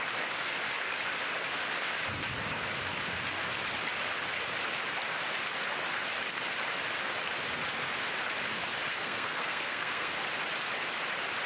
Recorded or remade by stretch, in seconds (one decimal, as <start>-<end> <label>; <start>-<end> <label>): 0.0-8.9 recorded; 8.9-10.1 remade; 10.1-11.5 recorded